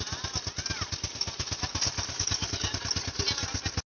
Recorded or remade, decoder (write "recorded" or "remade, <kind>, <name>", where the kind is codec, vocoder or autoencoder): recorded